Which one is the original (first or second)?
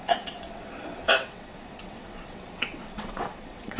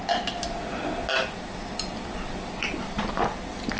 second